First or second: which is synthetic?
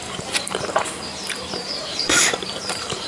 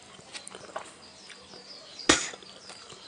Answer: first